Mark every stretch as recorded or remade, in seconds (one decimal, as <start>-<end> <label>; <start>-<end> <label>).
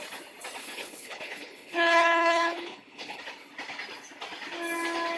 0.0-0.6 recorded; 0.6-3.2 remade; 3.2-5.2 recorded